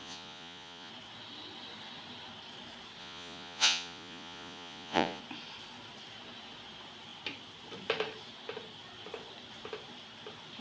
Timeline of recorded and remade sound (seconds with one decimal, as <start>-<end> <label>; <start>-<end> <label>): 0.0-0.9 remade; 0.9-3.0 recorded; 3.0-5.2 remade; 5.2-10.6 recorded